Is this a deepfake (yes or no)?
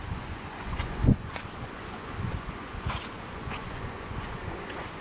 yes